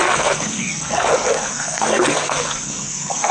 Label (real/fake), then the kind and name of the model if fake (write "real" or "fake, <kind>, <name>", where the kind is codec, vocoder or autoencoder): fake, codec, SNAC